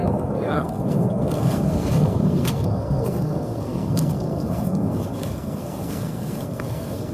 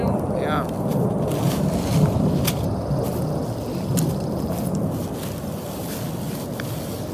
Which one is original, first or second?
second